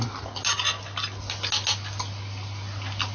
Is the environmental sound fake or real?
real